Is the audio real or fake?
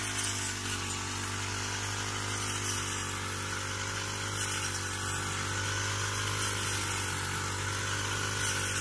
real